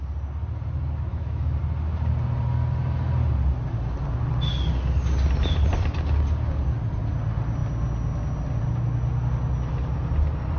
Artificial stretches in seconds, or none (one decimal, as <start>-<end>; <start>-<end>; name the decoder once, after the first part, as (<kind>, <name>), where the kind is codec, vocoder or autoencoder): 1.1-1.6 (autoencoder, DAC-VAE)